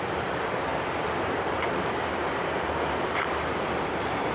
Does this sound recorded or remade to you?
remade